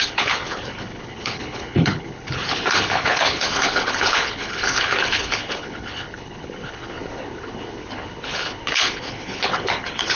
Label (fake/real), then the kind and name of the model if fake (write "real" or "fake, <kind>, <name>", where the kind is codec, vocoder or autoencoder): fake, codec, HILCodec